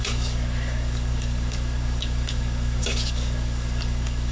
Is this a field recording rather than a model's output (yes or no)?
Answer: no